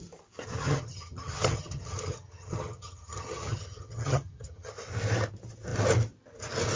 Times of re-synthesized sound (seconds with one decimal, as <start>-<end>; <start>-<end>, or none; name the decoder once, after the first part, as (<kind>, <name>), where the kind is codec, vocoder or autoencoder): 0.6-4.7 (vocoder, HiFi-GAN)